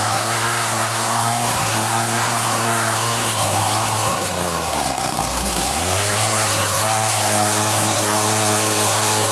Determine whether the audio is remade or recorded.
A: remade